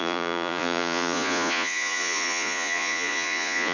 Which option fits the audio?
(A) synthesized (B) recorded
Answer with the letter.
A